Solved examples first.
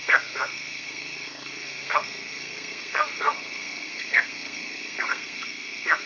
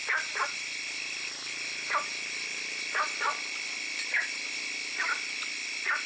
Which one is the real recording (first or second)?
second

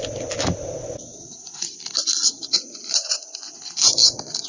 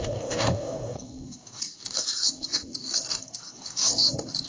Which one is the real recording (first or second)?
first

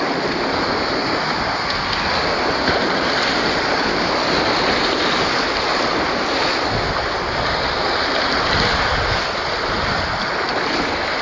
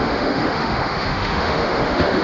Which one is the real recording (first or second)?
first